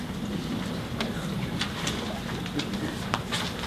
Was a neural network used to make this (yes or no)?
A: no